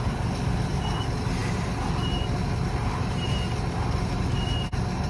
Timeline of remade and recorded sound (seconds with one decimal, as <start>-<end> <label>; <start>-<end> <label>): 0.0-5.1 recorded